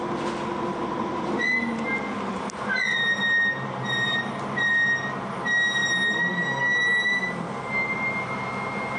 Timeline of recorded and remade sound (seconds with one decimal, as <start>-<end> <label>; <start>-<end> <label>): 0.0-9.0 recorded